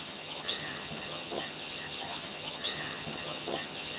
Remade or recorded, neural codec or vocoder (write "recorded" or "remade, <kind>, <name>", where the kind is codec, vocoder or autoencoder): remade, vocoder, HiFi-GAN